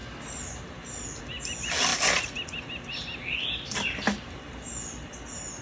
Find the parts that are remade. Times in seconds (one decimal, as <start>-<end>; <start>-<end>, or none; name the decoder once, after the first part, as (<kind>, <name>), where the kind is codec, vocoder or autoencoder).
none